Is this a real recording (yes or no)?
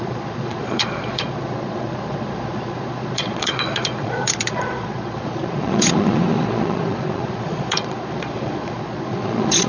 no